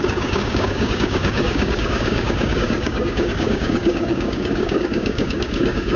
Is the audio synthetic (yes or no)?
yes